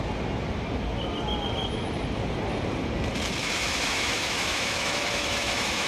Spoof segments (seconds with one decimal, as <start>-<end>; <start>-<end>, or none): 3.4-5.9